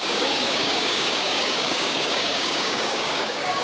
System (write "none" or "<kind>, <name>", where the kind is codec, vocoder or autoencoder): codec, DAC